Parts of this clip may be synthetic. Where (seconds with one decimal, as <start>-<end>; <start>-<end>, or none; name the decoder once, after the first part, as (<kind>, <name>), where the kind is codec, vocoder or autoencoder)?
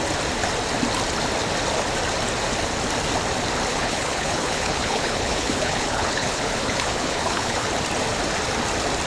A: 3.7-7.7 (codec, HILCodec)